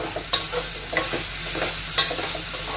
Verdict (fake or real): real